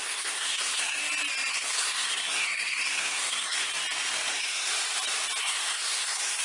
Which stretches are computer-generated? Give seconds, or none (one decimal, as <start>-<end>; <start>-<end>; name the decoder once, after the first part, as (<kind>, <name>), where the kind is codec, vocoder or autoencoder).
0.0-1.0 (codec, SNAC); 1.5-3.7; 4.3-4.7; 5.4-6.4